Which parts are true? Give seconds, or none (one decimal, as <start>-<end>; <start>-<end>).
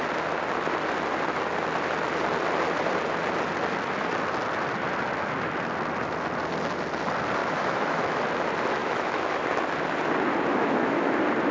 0.0-7.4; 8.2-8.8; 9.4-10.5; 11.1-11.5